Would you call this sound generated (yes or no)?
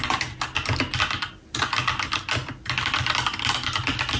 no